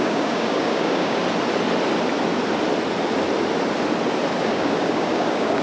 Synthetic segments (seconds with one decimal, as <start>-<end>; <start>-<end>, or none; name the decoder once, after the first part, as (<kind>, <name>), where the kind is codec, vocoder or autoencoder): 0.0-1.2 (codec, DAC); 4.4-5.6